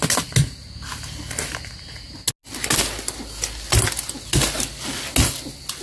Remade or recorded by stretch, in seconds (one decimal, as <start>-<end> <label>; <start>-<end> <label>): 0.0-5.8 recorded